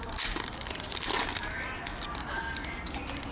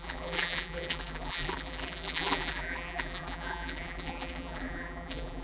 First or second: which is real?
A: first